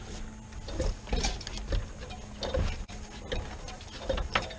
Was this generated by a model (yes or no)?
no